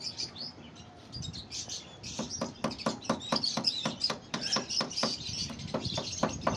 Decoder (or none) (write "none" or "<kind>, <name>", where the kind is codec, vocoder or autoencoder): vocoder, BigVGAN v2